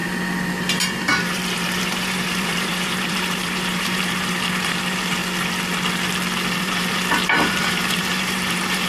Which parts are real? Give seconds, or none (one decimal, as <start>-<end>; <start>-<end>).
0.0-0.8; 5.2-6.6